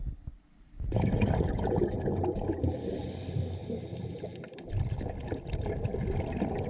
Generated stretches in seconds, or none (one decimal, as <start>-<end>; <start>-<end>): 3.6-4.7